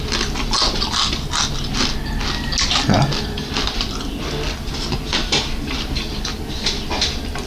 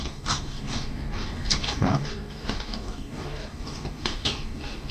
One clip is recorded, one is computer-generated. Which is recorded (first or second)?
first